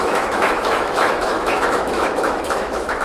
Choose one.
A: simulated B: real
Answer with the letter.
A